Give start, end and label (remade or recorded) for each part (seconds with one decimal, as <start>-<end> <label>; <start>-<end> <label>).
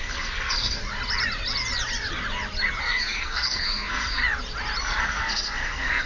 0.0-0.8 remade; 0.8-2.8 recorded; 2.8-4.2 remade; 4.2-4.8 recorded; 4.8-6.1 remade